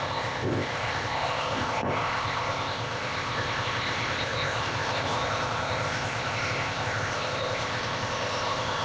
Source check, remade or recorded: remade